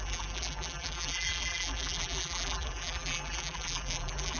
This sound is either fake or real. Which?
fake